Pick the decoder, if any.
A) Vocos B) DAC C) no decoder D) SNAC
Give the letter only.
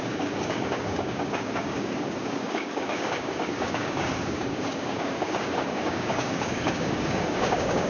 B